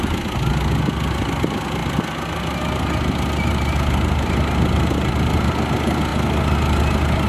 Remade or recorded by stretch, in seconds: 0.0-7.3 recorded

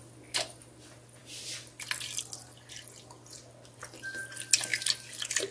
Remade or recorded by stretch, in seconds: 0.0-5.5 recorded

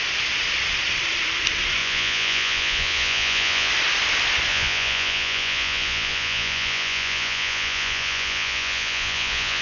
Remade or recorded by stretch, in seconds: 0.0-1.8 recorded; 1.8-3.7 remade; 3.7-4.5 recorded; 4.5-9.6 remade

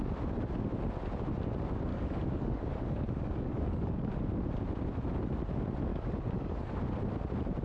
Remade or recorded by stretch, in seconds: 0.0-1.9 recorded; 1.9-4.1 remade; 4.1-5.9 recorded; 5.9-6.7 remade; 6.7-7.6 recorded